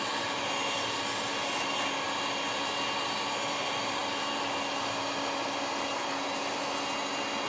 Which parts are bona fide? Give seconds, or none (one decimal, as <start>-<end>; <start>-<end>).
0.0-7.5